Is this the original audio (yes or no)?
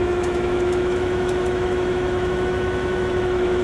no